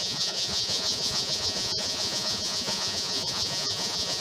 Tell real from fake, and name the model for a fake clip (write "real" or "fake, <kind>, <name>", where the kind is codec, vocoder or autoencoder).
fake, vocoder, Vocos